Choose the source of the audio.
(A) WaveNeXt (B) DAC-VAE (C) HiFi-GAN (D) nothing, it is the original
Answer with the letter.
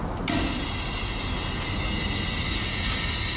D